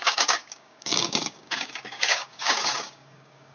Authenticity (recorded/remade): remade